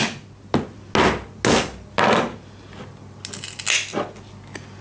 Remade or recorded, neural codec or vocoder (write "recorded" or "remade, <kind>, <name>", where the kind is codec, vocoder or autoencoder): recorded